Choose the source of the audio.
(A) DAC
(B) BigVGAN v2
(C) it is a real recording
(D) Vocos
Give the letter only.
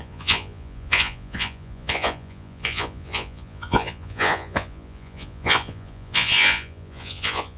D